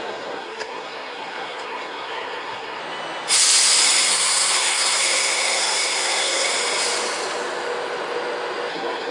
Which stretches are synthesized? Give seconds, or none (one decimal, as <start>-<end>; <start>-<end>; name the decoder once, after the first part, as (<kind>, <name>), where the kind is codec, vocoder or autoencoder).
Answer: 0.0-2.8 (codec, SNAC); 4.1-6.5; 8.7-9.1